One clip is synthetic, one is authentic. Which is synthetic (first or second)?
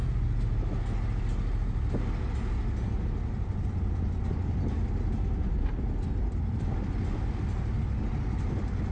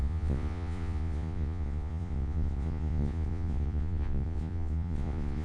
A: second